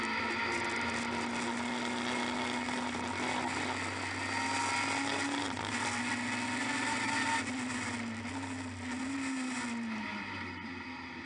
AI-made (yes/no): no